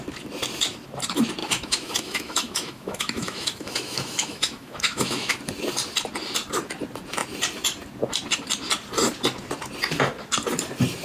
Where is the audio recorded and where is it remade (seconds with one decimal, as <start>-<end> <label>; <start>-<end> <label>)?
0.0-1.4 recorded; 1.4-5.4 remade; 5.4-11.0 recorded